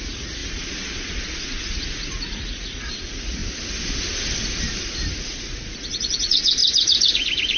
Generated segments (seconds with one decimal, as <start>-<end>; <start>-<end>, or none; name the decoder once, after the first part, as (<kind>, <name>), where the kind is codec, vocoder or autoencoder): 0.0-0.4 (vocoder, Vocos); 1.2-3.4; 5.3-6.6